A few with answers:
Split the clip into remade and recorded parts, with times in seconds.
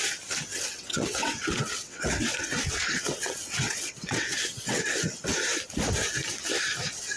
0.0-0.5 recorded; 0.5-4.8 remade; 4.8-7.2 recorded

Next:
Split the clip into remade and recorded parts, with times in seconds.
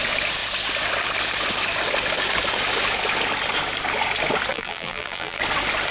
0.0-4.5 recorded; 4.5-5.4 remade; 5.4-5.9 recorded